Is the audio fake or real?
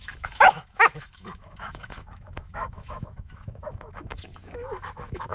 fake